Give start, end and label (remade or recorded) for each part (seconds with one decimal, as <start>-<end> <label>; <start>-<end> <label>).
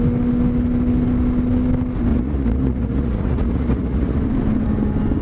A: 0.0-2.1 recorded; 2.1-4.2 remade; 4.2-5.2 recorded